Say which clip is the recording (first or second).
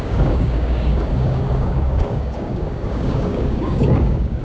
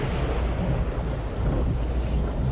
second